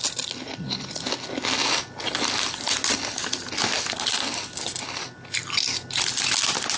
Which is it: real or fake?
real